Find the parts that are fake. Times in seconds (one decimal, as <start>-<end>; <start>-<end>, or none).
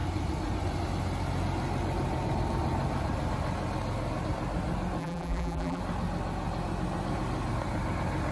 5.0-5.8